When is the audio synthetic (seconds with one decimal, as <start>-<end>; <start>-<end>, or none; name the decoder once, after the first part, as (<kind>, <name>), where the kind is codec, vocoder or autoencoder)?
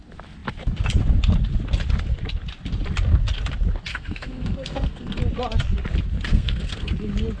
3.9-5.2 (codec, SNAC); 6.3-6.9